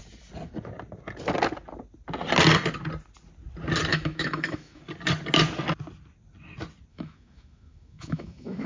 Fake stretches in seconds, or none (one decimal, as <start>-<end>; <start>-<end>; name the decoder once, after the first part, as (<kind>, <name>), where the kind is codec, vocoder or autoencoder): 3.9-4.8 (autoencoder, DAC-VAE); 6.9-8.7